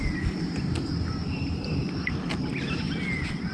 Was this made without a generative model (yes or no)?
yes